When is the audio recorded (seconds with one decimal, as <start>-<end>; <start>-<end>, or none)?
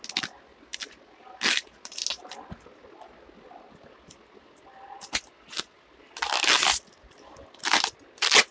0.0-8.5